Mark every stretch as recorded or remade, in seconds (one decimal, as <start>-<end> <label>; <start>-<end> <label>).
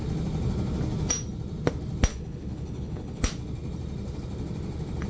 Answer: 0.0-2.1 recorded; 2.1-3.2 remade; 3.2-5.1 recorded